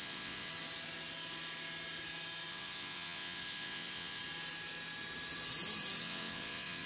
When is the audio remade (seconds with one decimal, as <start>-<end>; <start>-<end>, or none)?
0.0-0.5; 2.5-4.2; 6.0-6.9